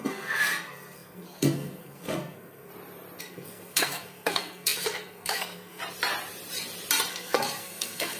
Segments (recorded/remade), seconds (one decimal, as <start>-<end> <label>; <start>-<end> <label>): 0.0-2.7 remade; 2.7-3.2 recorded; 3.2-5.8 remade; 5.8-7.1 recorded; 7.1-8.2 remade